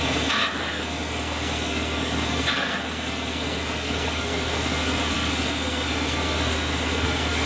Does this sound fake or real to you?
fake